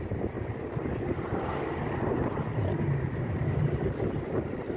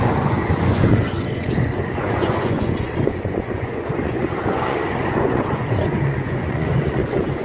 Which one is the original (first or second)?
first